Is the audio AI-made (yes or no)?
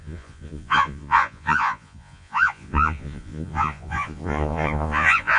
yes